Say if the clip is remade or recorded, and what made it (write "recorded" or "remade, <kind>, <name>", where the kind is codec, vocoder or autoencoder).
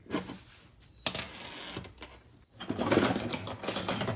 recorded